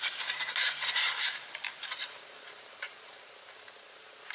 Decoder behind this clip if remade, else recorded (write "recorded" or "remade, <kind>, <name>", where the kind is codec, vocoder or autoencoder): remade, vocoder, BigVGAN v2